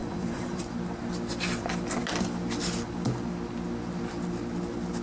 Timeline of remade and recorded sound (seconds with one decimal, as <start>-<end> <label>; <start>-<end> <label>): 0.0-0.6 remade; 0.6-5.0 recorded